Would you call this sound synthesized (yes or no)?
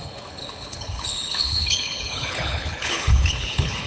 yes